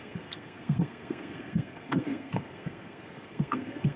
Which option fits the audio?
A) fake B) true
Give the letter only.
A